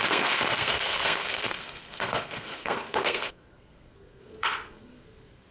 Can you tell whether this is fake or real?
fake